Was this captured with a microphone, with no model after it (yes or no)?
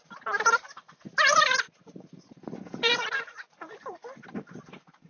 no